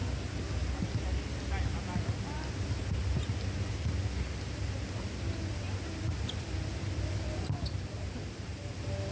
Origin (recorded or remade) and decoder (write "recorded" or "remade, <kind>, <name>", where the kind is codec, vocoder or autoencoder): recorded